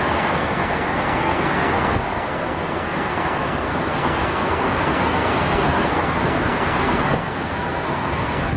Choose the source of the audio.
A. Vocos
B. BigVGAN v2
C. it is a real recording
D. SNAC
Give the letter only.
D